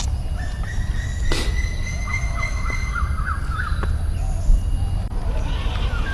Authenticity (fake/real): real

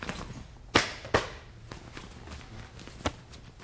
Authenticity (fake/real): real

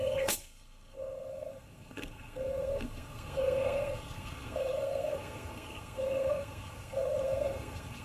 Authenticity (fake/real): fake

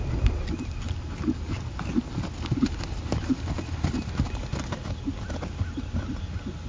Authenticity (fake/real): real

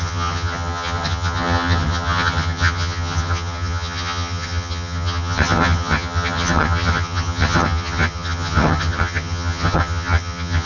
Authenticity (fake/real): fake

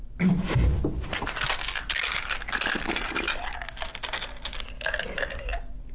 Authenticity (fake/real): real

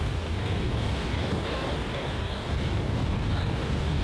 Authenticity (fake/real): fake